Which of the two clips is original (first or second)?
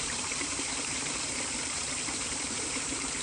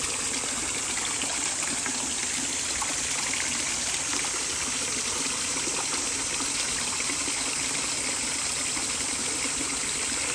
second